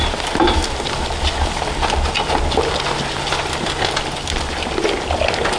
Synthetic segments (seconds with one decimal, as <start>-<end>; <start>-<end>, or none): none